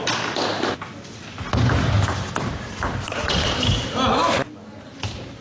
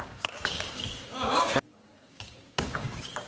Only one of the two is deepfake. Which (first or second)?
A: second